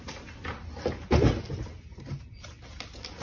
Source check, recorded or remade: recorded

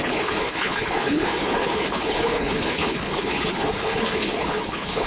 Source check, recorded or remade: remade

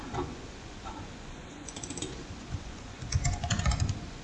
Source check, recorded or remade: remade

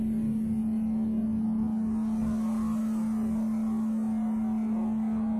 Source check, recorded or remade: recorded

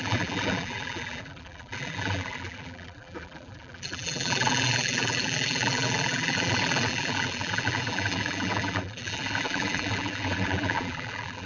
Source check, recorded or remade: remade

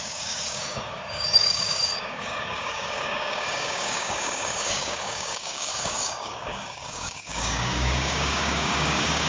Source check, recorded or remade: remade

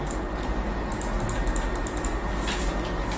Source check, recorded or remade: recorded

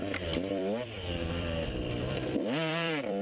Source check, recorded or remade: remade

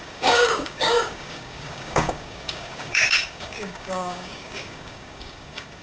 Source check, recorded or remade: remade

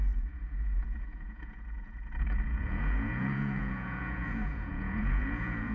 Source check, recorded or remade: remade